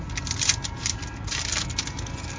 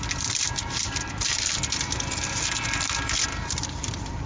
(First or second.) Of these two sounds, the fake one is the second